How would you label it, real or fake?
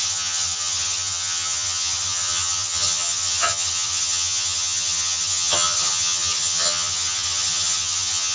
fake